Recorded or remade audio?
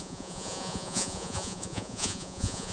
remade